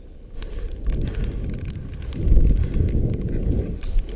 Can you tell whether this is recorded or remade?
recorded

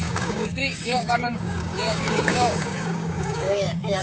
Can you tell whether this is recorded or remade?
remade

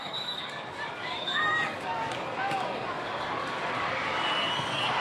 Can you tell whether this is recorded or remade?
remade